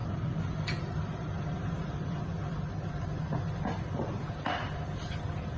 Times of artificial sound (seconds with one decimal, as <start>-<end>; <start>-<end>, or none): none

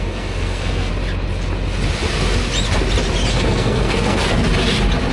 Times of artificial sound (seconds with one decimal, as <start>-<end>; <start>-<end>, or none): 0.0-0.9; 3.3-4.4

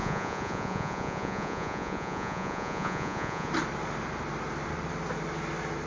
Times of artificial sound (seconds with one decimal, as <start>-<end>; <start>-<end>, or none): 0.0-3.5

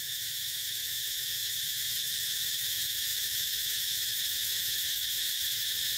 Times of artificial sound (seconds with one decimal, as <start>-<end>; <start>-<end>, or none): 0.0-6.0